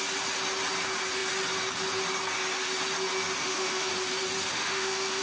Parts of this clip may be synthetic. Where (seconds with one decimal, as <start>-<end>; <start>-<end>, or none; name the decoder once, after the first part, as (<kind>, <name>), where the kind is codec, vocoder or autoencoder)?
3.4-3.9 (autoencoder, DAC-VAE); 4.5-5.2